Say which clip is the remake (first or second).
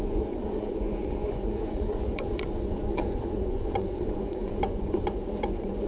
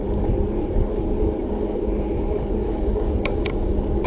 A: first